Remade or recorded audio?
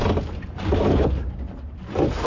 recorded